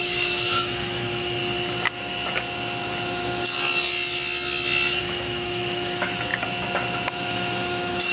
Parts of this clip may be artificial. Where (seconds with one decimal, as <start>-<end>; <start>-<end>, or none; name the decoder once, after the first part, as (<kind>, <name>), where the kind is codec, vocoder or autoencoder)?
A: 0.0-1.4 (autoencoder, DAC-VAE); 5.0-6.3; 7.1-8.1